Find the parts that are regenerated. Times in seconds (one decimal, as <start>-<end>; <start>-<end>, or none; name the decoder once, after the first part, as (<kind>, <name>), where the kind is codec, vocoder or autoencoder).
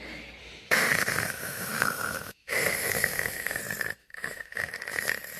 0.4-3.6 (autoencoder, DAC-VAE); 4.0-4.7